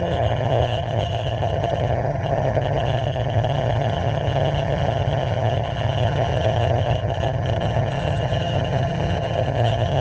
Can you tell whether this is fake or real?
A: fake